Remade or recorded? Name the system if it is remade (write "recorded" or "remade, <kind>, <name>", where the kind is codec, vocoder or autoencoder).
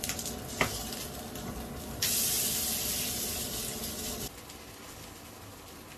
recorded